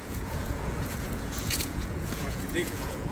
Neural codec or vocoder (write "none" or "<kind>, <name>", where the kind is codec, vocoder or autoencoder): vocoder, Vocos